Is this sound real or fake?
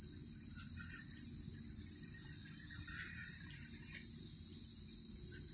real